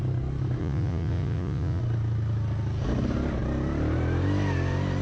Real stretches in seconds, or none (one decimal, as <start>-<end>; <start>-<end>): 0.0-0.6; 1.8-5.0